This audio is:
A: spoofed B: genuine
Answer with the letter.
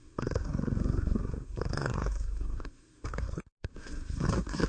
A